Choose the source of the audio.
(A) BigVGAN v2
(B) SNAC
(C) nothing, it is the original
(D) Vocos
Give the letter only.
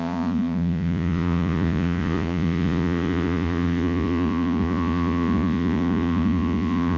D